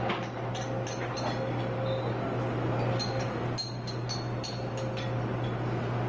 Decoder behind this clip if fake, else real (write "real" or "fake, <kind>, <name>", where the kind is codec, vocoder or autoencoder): real